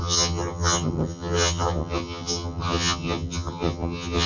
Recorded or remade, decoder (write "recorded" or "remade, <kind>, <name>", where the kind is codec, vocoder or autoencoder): remade, vocoder, HiFi-GAN